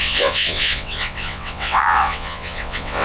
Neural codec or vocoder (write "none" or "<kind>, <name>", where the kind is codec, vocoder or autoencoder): vocoder, WaveNeXt